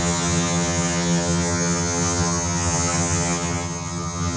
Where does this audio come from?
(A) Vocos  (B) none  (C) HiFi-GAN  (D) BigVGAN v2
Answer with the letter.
C